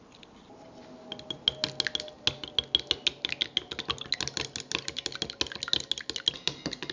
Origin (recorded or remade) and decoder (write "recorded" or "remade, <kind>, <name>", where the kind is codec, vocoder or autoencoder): recorded